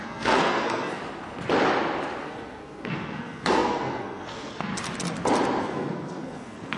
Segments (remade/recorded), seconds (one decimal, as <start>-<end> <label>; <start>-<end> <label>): 0.0-1.0 remade; 1.0-2.2 recorded; 2.2-4.7 remade; 4.7-5.6 recorded; 5.6-6.8 remade